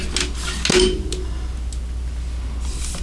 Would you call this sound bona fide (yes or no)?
yes